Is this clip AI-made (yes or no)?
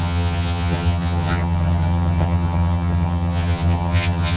yes